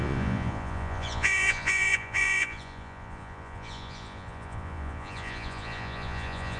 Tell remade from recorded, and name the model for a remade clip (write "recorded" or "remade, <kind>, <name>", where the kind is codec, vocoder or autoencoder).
remade, vocoder, Vocos